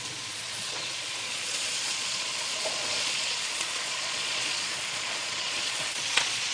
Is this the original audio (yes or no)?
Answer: no